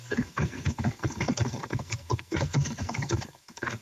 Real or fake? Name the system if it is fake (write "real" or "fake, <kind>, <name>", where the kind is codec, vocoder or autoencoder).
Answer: fake, codec, SNAC